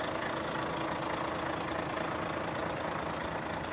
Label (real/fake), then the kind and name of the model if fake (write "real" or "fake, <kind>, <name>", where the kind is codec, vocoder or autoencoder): real